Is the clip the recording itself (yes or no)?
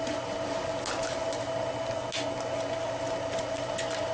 yes